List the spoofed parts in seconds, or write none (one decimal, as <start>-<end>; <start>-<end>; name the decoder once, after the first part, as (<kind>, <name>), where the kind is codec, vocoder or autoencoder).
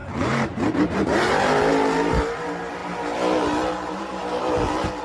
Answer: 0.0-5.0 (vocoder, BigVGAN v2)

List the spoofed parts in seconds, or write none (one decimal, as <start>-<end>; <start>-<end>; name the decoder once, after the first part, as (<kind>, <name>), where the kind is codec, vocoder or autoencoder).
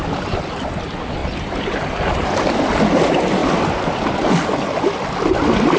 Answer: 0.0-0.6 (vocoder, BigVGAN v2); 1.2-2.7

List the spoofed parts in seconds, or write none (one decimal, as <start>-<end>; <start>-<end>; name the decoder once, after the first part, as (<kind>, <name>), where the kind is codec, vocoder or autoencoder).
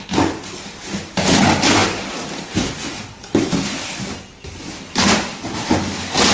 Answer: 1.8-3.0 (vocoder, BigVGAN v2)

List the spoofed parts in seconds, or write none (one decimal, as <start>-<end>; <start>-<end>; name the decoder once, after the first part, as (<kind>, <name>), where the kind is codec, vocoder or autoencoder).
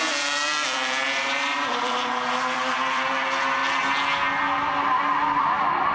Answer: 0.0-3.6 (vocoder, BigVGAN v2); 5.4-5.9